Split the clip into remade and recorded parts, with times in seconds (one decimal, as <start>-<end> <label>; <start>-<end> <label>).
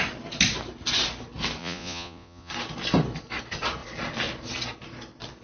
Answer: 0.0-1.6 recorded; 1.6-2.5 remade; 2.5-5.4 recorded